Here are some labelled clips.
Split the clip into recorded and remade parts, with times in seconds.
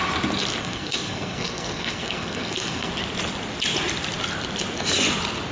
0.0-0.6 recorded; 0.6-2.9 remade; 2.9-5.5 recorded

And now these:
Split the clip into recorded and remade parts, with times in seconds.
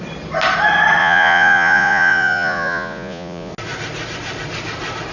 0.0-1.0 recorded; 1.0-3.5 remade; 3.5-5.1 recorded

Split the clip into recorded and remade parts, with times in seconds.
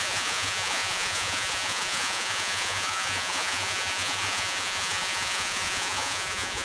0.0-6.6 remade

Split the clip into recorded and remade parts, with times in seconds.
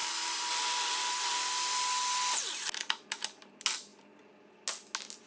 0.0-5.3 recorded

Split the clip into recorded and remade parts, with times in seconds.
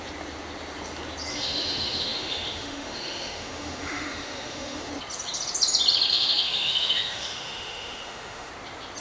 0.0-1.3 recorded; 1.3-4.9 remade; 4.9-6.1 recorded; 6.1-8.5 remade; 8.5-9.0 recorded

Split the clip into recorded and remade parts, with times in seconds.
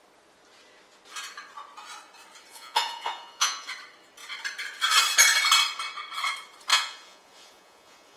0.0-2.5 recorded; 2.5-3.7 remade; 3.7-6.7 recorded; 6.7-8.2 remade